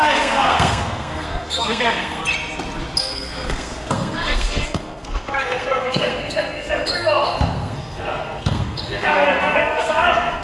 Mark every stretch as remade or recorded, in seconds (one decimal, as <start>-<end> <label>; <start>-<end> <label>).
0.0-2.2 remade; 2.2-3.0 recorded; 3.0-10.4 remade